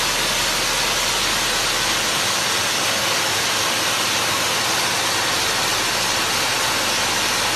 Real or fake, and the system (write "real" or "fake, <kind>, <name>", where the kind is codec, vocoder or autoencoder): real